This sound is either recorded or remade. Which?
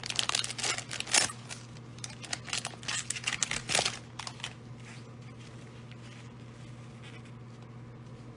recorded